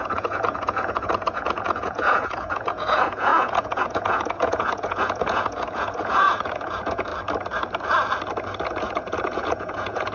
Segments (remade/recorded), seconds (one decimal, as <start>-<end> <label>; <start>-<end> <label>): 0.0-7.1 remade; 7.1-8.8 recorded; 8.8-10.1 remade

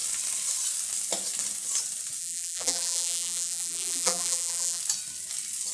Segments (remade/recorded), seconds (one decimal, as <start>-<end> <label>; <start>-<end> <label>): 0.0-2.2 recorded; 2.2-4.8 remade; 4.8-5.7 recorded

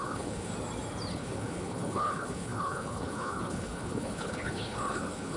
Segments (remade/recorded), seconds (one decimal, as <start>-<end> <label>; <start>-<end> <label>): 0.0-0.5 remade; 0.5-1.1 recorded; 1.1-5.4 remade

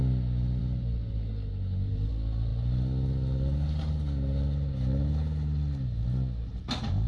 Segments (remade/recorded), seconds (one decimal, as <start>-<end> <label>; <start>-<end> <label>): 0.0-7.1 recorded

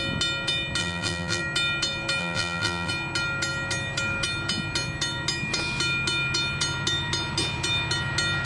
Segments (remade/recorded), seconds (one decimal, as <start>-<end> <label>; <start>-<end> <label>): 0.0-0.8 recorded; 0.8-1.4 remade; 1.4-2.2 recorded; 2.2-2.9 remade; 2.9-8.5 recorded

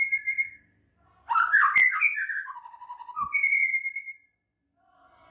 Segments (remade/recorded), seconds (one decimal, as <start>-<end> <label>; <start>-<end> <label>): 0.0-5.3 recorded